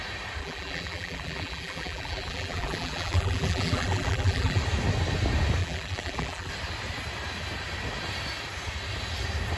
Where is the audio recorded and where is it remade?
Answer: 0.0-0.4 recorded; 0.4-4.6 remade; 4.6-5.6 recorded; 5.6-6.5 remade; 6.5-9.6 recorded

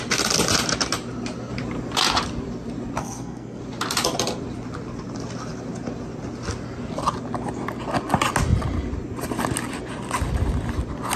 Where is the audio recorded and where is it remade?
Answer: 0.0-3.0 recorded; 3.0-3.6 remade; 3.6-11.2 recorded

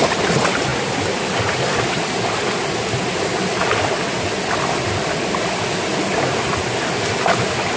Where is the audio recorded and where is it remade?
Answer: 0.0-7.8 remade

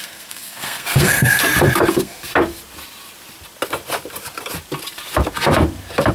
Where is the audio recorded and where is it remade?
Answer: 0.0-1.4 remade; 1.4-1.9 recorded; 1.9-2.3 remade; 2.3-6.1 recorded

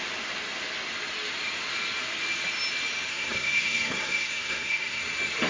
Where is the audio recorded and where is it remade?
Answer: 0.0-3.1 recorded; 3.1-5.0 remade; 5.0-5.5 recorded

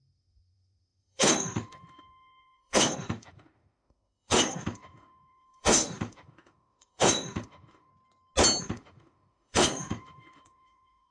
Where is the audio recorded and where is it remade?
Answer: 0.0-7.9 remade; 7.9-8.6 recorded; 8.6-11.1 remade